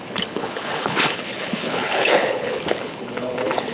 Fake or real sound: fake